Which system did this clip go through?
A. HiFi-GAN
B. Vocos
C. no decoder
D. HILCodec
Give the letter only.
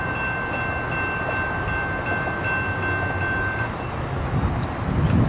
C